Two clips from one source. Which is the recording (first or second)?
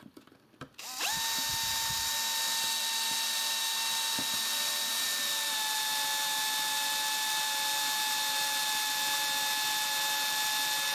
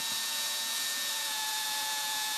first